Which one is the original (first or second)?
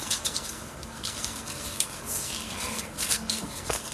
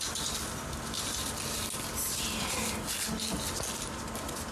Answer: second